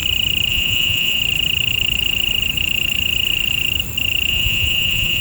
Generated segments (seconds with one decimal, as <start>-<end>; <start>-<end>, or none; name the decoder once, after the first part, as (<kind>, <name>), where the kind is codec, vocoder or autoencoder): 0.5-1.2 (vocoder, Vocos); 4.3-5.2